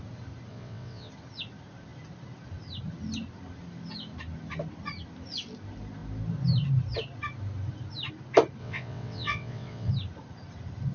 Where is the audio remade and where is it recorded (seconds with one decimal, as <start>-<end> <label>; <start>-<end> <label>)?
0.0-0.5 recorded; 0.5-1.1 remade; 1.1-8.6 recorded; 8.6-9.9 remade; 9.9-10.9 recorded